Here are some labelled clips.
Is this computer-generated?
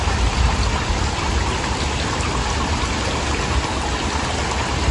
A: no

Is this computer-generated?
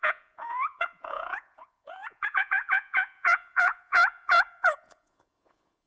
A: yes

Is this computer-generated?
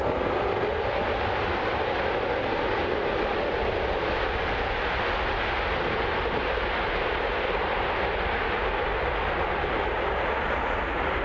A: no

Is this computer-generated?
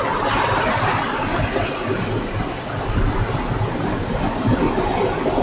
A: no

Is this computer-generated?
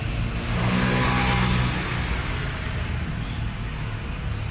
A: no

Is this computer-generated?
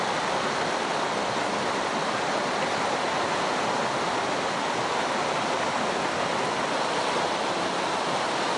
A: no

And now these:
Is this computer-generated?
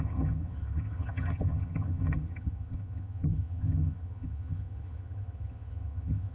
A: yes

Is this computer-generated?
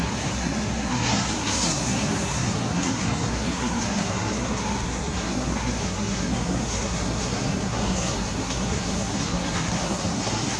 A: yes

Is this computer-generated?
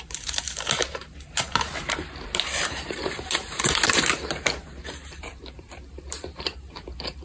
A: yes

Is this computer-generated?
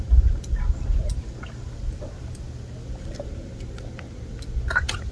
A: no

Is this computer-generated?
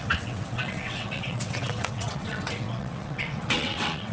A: yes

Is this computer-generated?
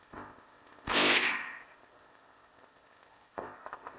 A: yes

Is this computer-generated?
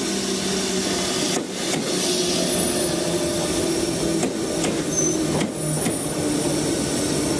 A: no